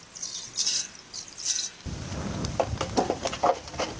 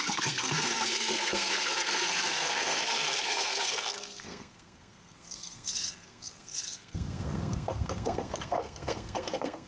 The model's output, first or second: second